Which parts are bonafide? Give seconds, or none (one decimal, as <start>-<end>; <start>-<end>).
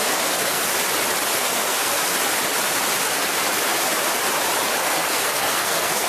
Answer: 0.6-1.4; 2.0-4.8